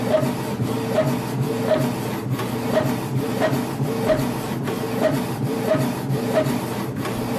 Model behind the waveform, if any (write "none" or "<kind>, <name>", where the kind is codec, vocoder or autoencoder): none